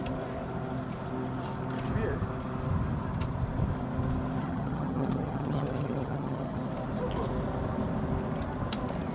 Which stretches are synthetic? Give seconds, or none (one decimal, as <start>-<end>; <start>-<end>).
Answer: 4.4-6.6